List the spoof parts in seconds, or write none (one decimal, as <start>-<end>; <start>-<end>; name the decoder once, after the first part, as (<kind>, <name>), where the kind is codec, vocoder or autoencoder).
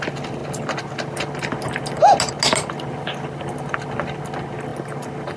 none